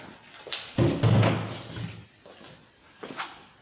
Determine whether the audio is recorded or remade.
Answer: recorded